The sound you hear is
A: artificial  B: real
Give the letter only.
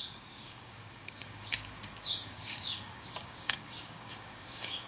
A